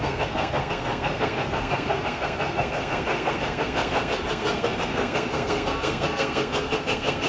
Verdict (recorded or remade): remade